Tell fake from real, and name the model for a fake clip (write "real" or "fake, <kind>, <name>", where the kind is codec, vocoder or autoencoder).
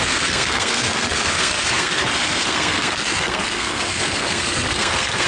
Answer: fake, codec, SNAC